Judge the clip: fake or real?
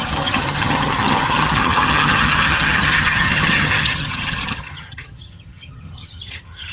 fake